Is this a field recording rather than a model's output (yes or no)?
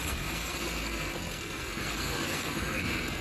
no